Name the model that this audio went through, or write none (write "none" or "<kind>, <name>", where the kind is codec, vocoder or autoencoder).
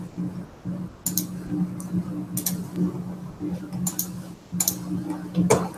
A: none